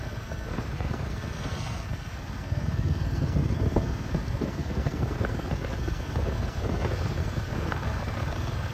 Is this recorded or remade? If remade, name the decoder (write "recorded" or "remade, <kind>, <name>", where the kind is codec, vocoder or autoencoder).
remade, codec, SNAC